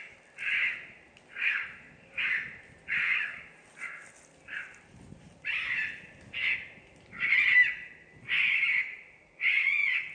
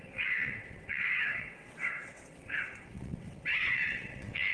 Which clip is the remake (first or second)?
second